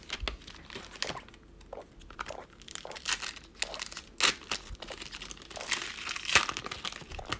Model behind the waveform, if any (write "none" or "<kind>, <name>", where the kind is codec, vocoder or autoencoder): none